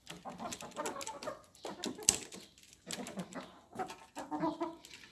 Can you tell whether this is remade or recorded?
recorded